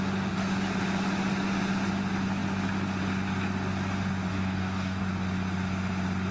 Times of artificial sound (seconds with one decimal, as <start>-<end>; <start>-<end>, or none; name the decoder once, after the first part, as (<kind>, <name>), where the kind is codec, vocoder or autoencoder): 4.3-5.0 (codec, DAC)